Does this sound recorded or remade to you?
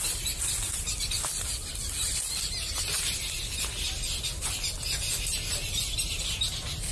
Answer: recorded